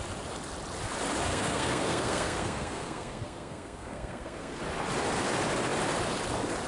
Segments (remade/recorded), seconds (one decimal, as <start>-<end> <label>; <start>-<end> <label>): 0.0-1.3 recorded; 1.3-4.6 remade; 4.6-6.7 recorded